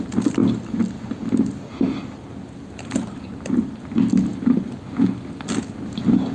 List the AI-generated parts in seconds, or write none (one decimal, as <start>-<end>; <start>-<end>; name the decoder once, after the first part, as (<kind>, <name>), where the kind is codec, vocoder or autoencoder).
none